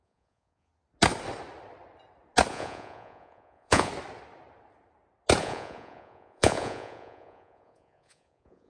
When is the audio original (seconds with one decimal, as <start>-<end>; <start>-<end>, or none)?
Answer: 0.7-2.5; 3.9-5.4